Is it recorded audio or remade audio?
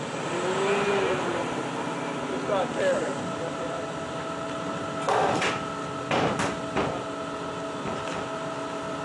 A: recorded